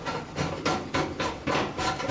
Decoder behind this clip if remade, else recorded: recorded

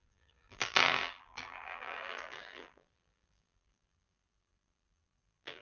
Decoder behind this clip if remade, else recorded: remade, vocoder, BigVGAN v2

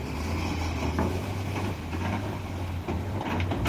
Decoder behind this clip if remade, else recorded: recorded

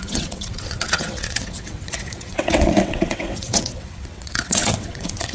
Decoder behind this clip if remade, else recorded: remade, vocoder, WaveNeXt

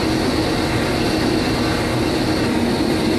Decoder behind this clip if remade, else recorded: recorded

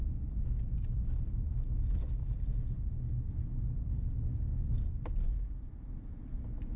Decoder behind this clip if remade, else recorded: recorded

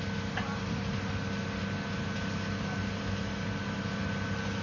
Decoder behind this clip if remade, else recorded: recorded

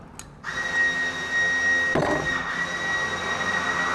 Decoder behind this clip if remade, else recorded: recorded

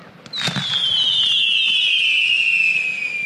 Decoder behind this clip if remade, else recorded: recorded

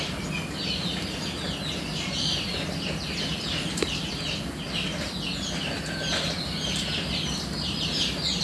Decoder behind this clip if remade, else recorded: recorded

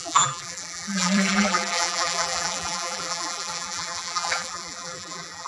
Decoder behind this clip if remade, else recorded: remade, vocoder, BigVGAN v2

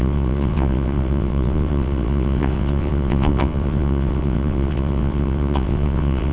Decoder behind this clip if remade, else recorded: remade, vocoder, WaveNeXt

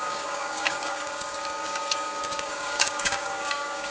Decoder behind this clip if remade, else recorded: remade, codec, DAC